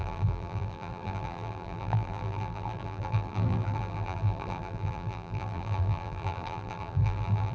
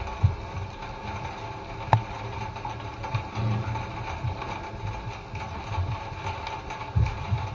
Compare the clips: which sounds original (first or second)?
second